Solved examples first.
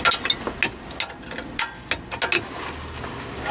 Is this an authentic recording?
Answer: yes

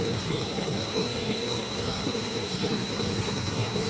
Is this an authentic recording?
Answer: no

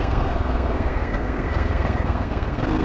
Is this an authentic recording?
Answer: no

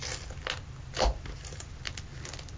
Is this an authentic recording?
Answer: yes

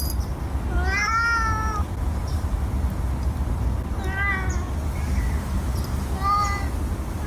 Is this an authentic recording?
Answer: yes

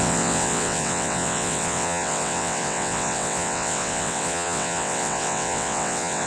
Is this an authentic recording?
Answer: no